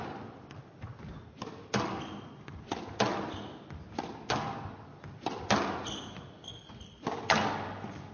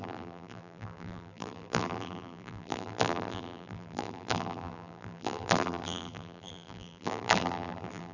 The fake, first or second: second